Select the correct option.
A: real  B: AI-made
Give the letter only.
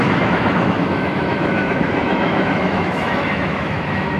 B